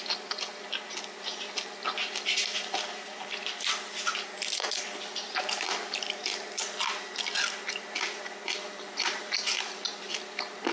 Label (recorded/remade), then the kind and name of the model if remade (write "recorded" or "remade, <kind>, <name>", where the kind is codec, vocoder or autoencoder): recorded